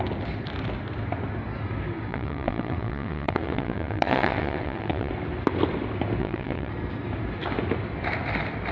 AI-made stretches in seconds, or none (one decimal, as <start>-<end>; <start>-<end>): 2.1-5.1; 6.2-6.7